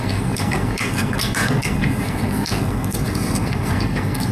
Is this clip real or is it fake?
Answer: fake